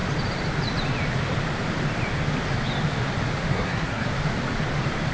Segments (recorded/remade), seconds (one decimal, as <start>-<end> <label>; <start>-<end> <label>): 0.0-3.5 recorded; 3.5-4.1 remade; 4.1-5.1 recorded